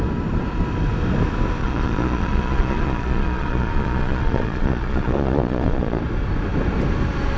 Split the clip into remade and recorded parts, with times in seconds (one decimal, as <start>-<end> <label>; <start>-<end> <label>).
0.0-1.6 recorded; 1.6-6.0 remade; 6.0-7.4 recorded